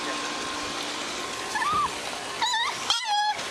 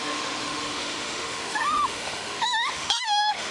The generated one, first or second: second